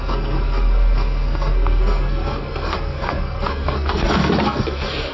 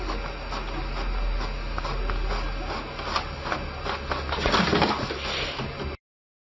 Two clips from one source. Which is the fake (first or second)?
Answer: first